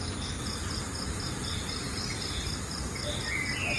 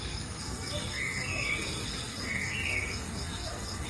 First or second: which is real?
first